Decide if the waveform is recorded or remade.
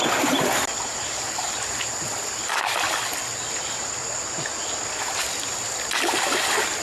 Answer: recorded